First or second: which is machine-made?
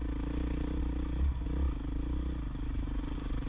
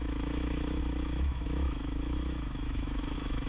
second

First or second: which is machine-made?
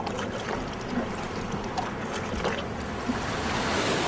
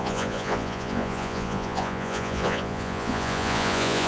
second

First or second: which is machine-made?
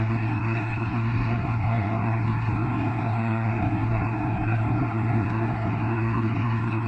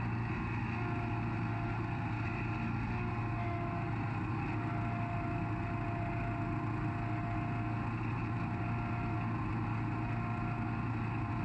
first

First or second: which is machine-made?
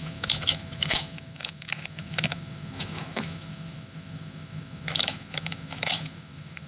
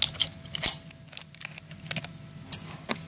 first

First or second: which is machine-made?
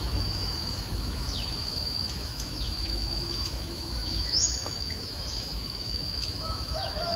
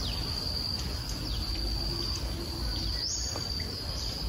first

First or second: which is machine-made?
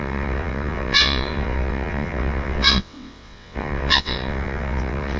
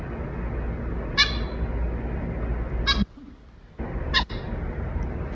first